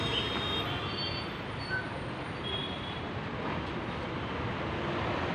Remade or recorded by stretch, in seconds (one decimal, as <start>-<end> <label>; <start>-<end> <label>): 0.0-2.6 recorded; 2.6-5.3 remade